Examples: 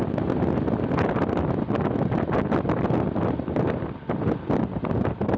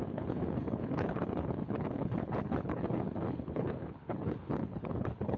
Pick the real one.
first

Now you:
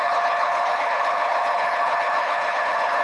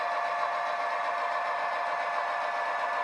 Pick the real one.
second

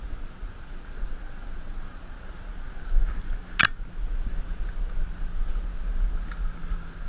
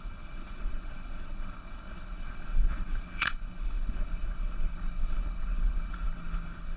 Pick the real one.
first